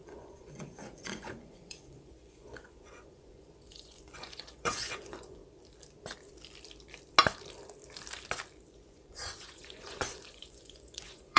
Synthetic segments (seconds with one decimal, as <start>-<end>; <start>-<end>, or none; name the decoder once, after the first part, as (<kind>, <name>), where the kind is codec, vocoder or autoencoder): 0.0-5.4 (vocoder, Vocos); 8.7-11.4